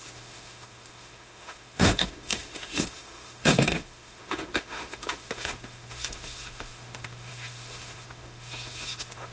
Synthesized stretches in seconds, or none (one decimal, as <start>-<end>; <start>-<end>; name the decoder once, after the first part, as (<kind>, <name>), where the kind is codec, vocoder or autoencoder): 0.0-9.3 (autoencoder, DAC-VAE)